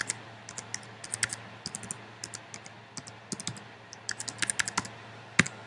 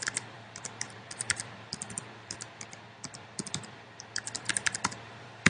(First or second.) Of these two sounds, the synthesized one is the second